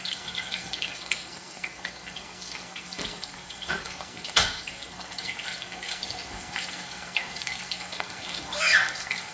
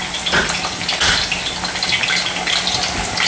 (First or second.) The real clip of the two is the second